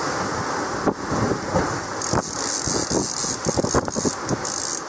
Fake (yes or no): no